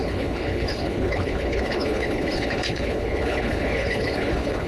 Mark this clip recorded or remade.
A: remade